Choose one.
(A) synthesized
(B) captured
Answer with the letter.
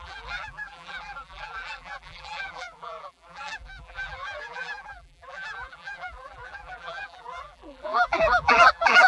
A